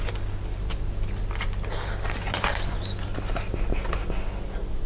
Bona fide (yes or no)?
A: yes